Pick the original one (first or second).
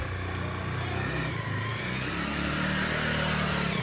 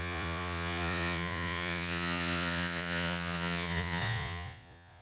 first